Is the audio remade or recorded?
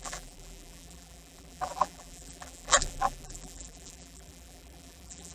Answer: remade